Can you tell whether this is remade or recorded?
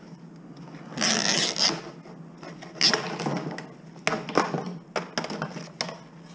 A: recorded